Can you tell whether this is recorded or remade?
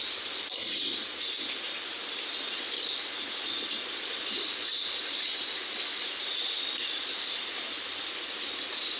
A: recorded